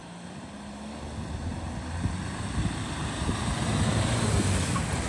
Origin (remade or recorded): recorded